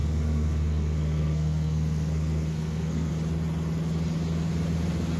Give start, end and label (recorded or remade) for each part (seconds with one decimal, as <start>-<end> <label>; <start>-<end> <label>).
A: 0.0-3.1 remade; 3.1-5.2 recorded